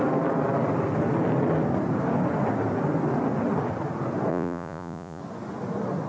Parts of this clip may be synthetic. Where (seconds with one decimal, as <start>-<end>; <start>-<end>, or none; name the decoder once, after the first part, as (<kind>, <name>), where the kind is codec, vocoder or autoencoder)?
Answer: 4.3-5.2 (vocoder, Vocos)